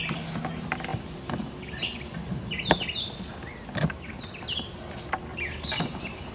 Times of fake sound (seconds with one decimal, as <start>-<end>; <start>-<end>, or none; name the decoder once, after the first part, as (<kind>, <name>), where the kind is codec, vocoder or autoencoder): 5.3-6.3 (vocoder, BigVGAN v2)

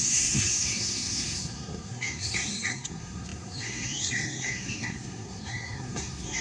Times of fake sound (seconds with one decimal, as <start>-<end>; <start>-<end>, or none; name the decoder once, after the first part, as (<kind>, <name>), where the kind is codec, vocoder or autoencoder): 0.0-6.4 (codec, SNAC)